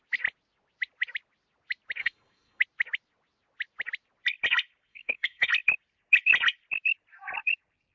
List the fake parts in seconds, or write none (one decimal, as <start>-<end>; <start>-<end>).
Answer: 2.0-2.6; 4.9-5.5